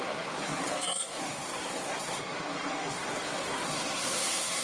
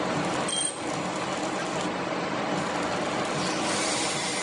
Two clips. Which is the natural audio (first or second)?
second